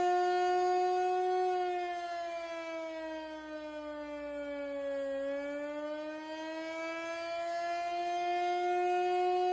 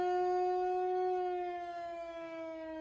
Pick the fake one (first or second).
second